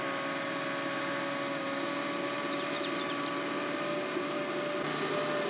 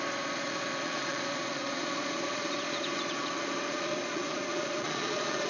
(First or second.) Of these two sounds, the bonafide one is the first